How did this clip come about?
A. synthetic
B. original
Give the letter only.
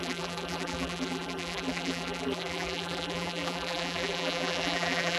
A